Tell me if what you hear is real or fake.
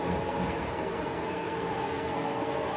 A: fake